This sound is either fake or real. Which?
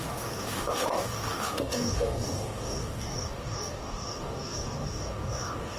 fake